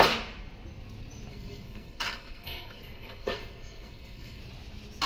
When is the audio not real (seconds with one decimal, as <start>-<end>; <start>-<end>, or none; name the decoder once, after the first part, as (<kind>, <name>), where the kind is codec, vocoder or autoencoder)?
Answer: 1.3-4.4 (codec, SNAC)